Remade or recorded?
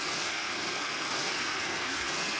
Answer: remade